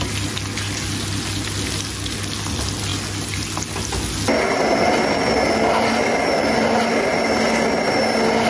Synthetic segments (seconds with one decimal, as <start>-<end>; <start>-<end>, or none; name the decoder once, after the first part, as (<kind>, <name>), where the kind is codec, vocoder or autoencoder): none